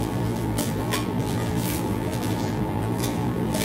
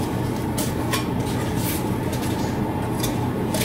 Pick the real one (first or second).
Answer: second